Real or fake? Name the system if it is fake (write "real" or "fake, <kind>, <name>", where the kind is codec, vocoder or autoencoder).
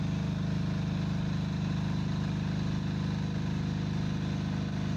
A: real